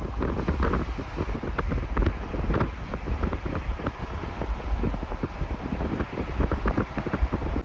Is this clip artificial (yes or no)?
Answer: no